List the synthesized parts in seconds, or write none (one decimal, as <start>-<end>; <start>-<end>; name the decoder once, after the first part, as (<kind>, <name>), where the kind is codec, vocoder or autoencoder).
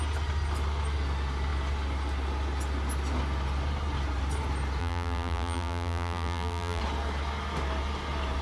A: 4.8-6.8 (vocoder, BigVGAN v2)